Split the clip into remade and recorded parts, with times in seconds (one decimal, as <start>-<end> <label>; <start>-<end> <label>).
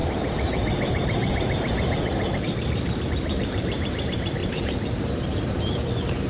0.0-4.4 remade; 4.4-5.5 recorded; 5.5-6.3 remade